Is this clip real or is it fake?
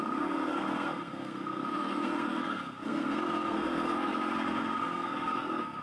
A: fake